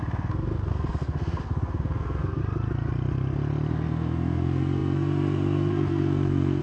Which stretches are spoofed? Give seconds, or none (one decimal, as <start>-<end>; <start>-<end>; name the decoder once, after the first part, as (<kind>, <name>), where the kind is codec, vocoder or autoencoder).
0.0-2.4 (codec, SNAC); 3.7-6.6